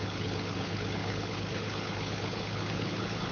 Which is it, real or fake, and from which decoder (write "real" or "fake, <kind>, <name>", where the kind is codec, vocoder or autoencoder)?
fake, codec, HILCodec